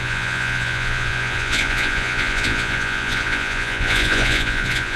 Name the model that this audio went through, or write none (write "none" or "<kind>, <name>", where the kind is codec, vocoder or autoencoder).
vocoder, Vocos